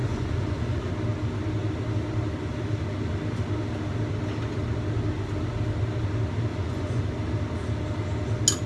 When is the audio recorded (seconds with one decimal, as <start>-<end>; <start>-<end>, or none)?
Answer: 0.9-6.5; 7.0-8.7